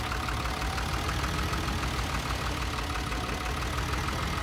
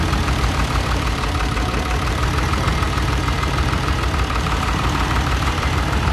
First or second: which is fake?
second